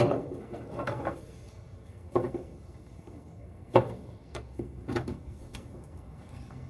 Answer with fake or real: fake